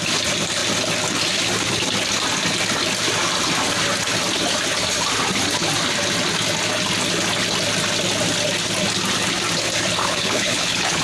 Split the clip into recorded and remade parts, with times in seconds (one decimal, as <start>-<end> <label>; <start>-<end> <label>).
0.0-10.0 recorded; 10.0-11.0 remade